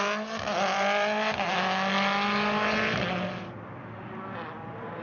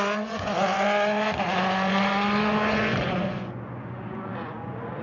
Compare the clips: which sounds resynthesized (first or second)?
second